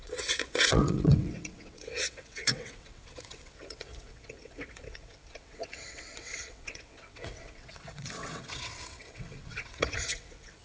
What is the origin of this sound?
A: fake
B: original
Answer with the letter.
A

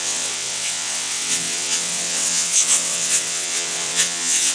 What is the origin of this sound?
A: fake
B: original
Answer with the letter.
A